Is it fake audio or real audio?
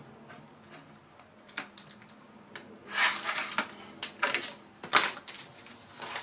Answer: real